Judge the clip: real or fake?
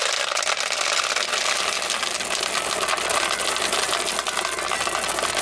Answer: real